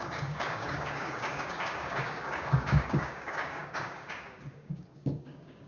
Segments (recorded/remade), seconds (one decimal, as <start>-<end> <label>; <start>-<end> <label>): 0.0-5.7 remade